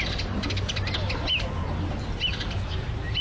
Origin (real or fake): real